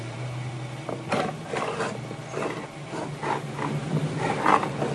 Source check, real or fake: real